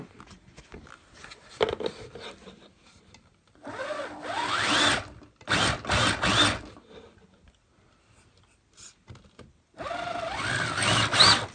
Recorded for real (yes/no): yes